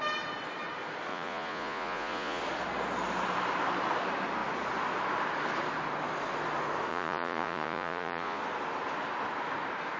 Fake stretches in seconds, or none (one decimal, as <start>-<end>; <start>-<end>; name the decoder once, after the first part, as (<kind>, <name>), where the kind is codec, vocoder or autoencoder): 1.1-2.4 (vocoder, Vocos); 6.9-8.4